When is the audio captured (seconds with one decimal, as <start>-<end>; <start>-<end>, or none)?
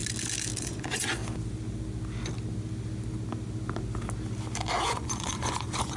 0.0-0.6; 1.2-4.8